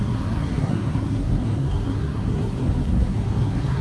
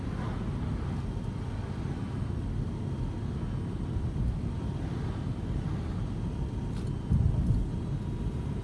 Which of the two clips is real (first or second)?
second